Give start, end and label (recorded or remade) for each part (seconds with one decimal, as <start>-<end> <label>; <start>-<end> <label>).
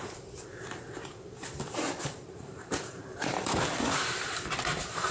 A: 0.0-5.1 remade